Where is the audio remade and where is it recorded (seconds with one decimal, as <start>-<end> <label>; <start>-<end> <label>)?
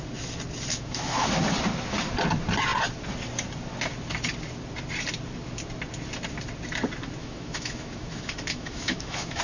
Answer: 0.0-0.7 recorded; 0.7-1.3 remade; 1.3-7.2 recorded; 7.2-9.4 remade